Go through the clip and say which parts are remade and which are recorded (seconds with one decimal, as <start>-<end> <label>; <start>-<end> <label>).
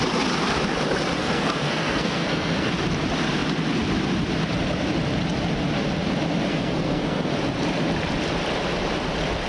0.0-1.2 recorded; 1.2-2.7 remade; 2.7-6.5 recorded; 6.5-7.3 remade; 7.3-9.5 recorded